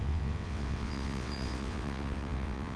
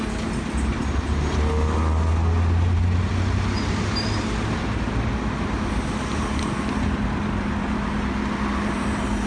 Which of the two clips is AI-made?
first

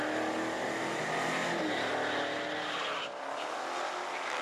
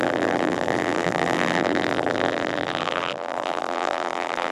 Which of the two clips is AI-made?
second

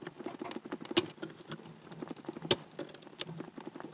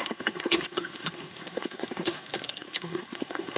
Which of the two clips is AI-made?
second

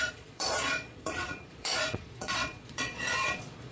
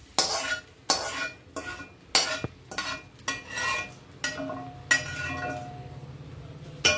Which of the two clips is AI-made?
first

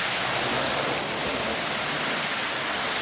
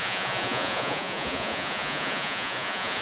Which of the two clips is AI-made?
second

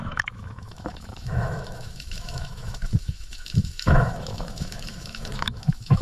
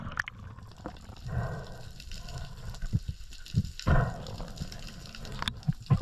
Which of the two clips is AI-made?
first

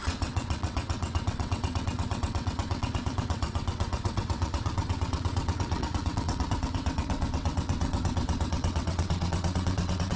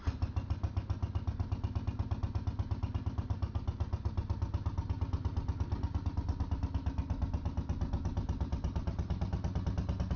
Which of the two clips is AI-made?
first